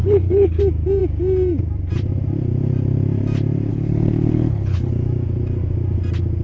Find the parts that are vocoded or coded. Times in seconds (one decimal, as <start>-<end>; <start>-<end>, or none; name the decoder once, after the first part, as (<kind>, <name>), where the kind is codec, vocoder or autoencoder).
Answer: 0.0-0.6 (codec, HILCodec); 3.7-4.9